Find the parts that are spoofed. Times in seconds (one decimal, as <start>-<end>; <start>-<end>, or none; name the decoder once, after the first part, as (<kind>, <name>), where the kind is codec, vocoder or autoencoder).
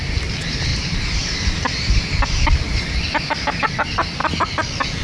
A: 0.7-3.7 (vocoder, BigVGAN v2)